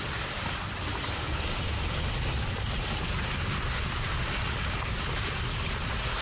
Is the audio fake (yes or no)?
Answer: no